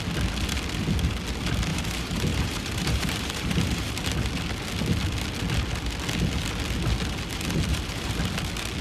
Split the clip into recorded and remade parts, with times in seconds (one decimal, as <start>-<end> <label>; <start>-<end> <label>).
0.0-1.7 recorded; 1.7-3.9 remade; 3.9-7.7 recorded; 7.7-8.2 remade; 8.2-8.8 recorded